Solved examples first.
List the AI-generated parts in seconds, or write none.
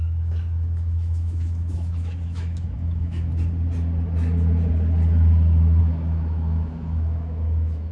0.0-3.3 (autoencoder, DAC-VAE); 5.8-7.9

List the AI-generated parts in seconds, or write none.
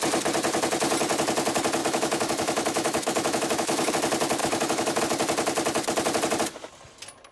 1.8-3.9 (autoencoder, DAC-VAE); 4.4-5.0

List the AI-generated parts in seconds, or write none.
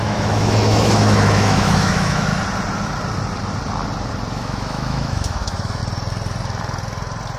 0.0-2.3 (autoencoder, DAC-VAE); 4.3-5.8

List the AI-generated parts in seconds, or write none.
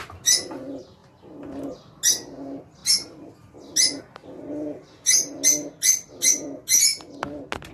none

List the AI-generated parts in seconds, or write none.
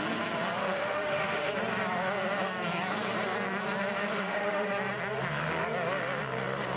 0.6-1.5 (autoencoder, DAC-VAE); 4.0-4.7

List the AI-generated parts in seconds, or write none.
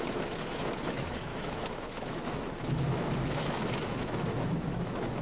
0.0-5.2 (autoencoder, DAC-VAE)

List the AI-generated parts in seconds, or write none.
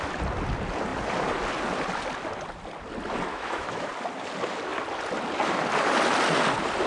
3.3-3.9 (autoencoder, DAC-VAE)